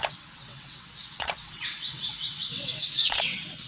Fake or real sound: fake